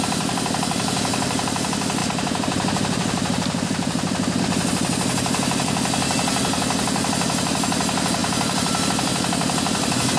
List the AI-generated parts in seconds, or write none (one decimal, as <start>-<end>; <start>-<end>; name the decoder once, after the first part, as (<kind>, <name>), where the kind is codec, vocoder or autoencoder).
2.0-4.4 (vocoder, BigVGAN v2); 8.2-8.9